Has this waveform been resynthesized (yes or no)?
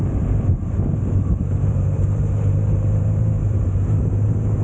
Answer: yes